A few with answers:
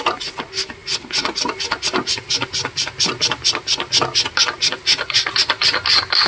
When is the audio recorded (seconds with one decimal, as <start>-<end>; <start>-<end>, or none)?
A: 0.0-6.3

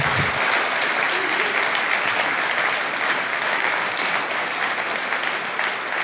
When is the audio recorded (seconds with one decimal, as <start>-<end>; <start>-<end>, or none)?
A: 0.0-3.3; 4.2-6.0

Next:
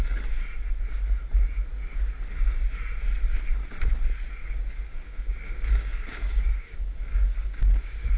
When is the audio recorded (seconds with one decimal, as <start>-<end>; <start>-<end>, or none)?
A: 0.0-4.4

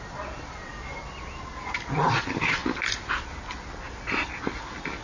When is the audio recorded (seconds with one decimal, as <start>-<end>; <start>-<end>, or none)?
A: 0.0-5.0